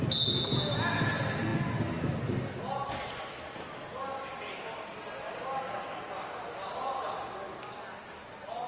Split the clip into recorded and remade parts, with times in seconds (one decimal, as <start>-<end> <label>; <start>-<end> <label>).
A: 0.0-8.7 recorded